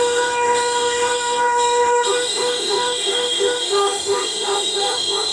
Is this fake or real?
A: fake